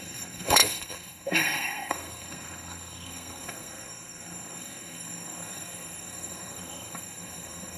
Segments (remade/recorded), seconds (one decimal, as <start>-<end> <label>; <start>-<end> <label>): 0.0-7.8 remade